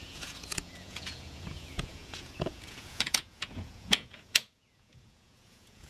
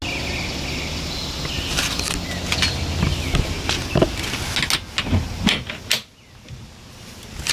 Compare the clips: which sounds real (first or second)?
second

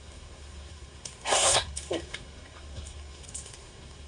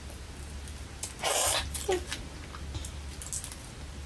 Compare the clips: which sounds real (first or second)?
second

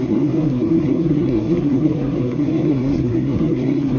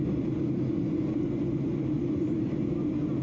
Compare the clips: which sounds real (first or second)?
second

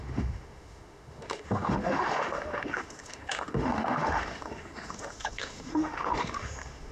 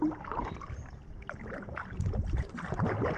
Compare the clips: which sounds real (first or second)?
second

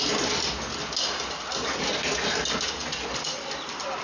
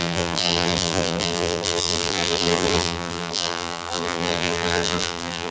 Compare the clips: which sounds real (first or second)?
first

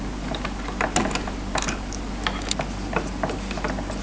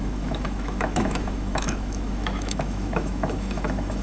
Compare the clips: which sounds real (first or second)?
first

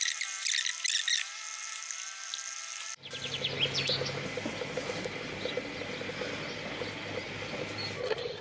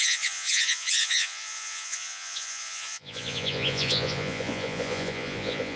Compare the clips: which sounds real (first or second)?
first